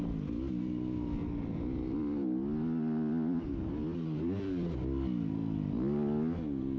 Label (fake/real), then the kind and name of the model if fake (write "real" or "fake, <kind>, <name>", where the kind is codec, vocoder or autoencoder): real